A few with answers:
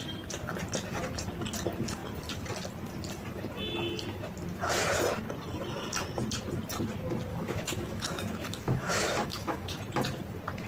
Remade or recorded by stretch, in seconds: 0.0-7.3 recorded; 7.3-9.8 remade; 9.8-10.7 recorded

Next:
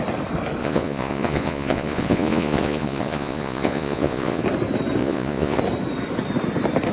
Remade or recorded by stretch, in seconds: 0.0-0.6 recorded; 0.6-4.4 remade; 4.4-5.0 recorded; 5.0-5.6 remade; 5.6-6.9 recorded

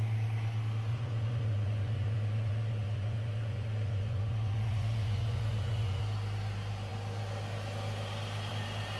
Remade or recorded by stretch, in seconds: 0.0-0.9 recorded; 0.9-6.0 remade; 6.0-9.0 recorded

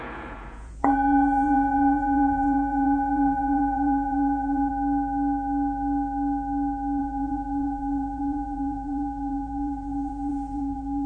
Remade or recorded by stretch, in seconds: 0.0-4.7 remade; 4.7-7.0 recorded; 7.0-11.1 remade

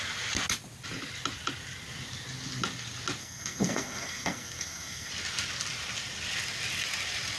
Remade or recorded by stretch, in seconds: 0.0-3.2 recorded; 3.2-5.1 remade; 5.1-7.4 recorded

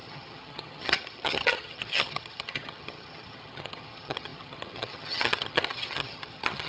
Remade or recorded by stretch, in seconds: 0.0-6.7 remade

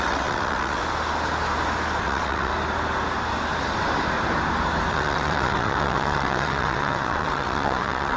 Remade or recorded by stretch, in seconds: 0.0-0.8 remade; 0.8-2.0 recorded; 2.0-2.5 remade; 2.5-4.9 recorded; 4.9-8.2 remade